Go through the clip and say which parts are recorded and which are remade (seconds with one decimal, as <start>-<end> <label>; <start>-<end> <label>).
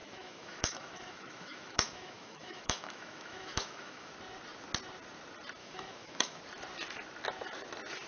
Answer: 0.0-4.1 remade; 4.1-5.6 recorded; 5.6-6.4 remade; 6.4-8.1 recorded